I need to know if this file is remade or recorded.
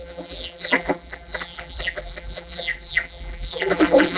remade